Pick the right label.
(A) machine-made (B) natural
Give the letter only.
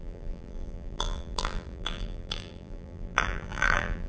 A